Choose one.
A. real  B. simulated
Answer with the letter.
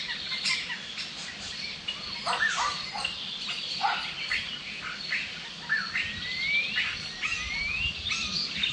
A